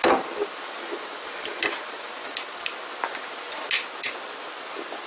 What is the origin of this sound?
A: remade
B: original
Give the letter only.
B